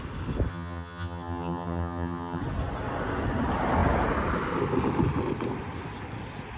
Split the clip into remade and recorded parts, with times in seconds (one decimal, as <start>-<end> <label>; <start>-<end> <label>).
0.0-0.5 recorded; 0.5-2.4 remade; 2.4-6.6 recorded